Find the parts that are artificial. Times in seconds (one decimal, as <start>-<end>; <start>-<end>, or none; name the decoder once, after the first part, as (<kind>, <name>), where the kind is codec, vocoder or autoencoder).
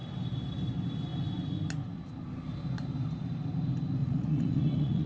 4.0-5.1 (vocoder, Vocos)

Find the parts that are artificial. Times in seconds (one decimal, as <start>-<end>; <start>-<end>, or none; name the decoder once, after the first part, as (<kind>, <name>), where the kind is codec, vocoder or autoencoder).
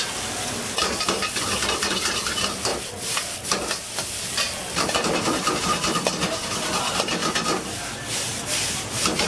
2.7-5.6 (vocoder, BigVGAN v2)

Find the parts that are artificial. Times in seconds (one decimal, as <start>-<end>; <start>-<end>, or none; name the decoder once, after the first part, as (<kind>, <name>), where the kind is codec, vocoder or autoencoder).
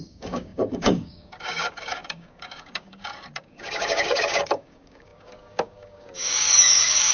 0.0-7.1 (codec, DAC)